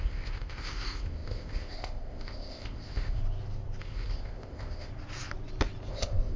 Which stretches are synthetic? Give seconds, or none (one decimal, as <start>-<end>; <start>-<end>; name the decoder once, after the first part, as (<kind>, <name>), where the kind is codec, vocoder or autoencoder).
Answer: 0.0-3.2 (codec, ZipCodec); 3.8-4.9; 5.9-6.4